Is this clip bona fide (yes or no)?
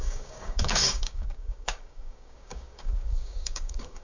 no